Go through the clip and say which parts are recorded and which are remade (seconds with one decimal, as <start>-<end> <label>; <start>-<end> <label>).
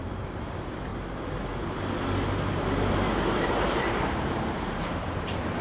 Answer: 0.0-0.9 remade; 0.9-2.5 recorded; 2.5-5.6 remade